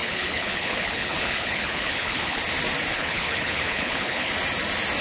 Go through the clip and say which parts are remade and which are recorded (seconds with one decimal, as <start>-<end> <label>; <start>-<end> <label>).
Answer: 0.0-2.4 remade; 2.4-2.9 recorded; 2.9-4.3 remade; 4.3-5.0 recorded